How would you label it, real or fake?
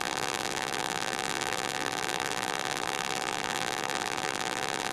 fake